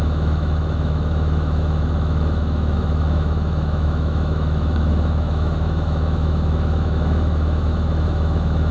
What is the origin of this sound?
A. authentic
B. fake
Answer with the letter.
B